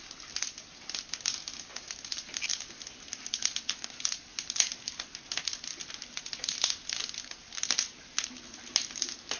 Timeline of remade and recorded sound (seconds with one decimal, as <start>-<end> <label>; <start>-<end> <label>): 0.0-9.4 recorded